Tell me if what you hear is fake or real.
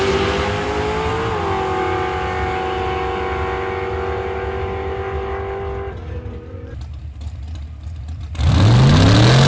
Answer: real